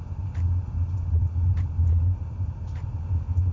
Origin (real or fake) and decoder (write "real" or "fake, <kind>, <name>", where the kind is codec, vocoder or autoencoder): fake, vocoder, BigVGAN v2